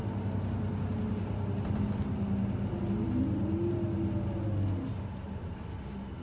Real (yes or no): yes